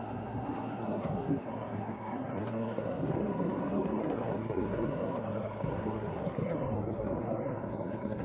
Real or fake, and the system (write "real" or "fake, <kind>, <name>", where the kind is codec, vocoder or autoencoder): fake, codec, SNAC